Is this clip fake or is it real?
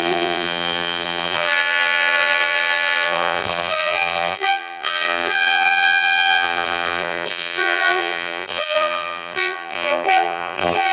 fake